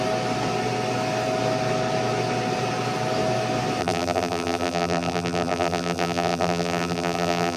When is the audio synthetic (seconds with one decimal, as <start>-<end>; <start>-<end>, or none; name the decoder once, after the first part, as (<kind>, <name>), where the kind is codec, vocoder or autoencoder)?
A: 3.8-7.6 (vocoder, BigVGAN v2)